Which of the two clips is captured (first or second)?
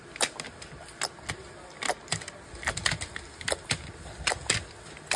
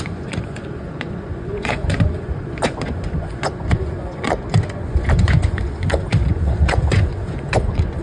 first